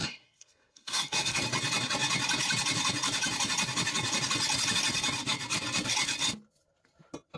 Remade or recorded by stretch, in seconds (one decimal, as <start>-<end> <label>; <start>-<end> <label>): 0.0-1.4 remade; 1.4-7.4 recorded